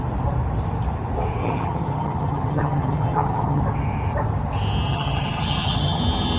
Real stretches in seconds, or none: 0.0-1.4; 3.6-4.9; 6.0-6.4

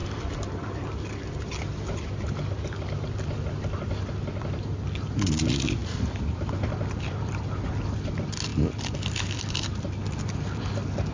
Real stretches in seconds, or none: 0.6-5.8; 8.1-8.5; 10.7-11.1

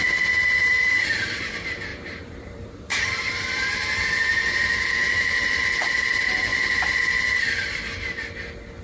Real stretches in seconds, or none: 0.0-0.6; 1.5-1.9; 5.6-8.8

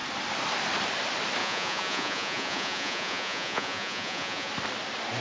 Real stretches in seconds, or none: 0.0-1.4; 4.5-5.2